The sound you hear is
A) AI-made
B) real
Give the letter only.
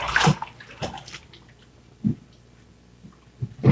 B